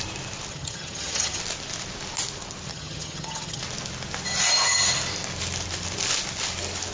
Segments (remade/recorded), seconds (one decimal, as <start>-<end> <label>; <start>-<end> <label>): 0.0-0.5 recorded; 0.5-1.4 remade; 1.4-2.7 recorded; 2.7-3.6 remade; 3.6-6.9 recorded